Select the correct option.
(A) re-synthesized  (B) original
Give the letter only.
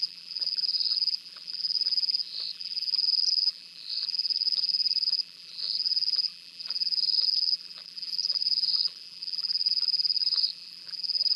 A